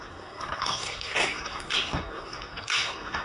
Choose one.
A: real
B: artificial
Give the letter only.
B